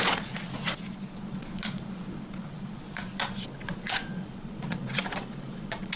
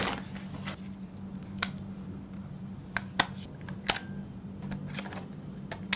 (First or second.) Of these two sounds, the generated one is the first